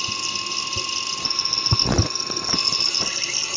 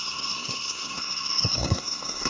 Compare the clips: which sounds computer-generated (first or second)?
second